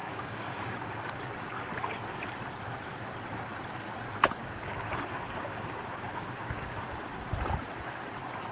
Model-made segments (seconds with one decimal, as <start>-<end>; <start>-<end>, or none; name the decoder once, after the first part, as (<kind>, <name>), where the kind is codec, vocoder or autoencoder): 0.0-1.1 (codec, DAC); 4.4-6.8